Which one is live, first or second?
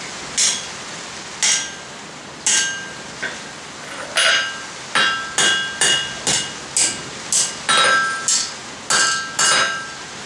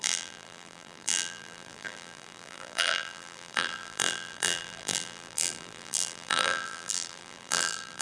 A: first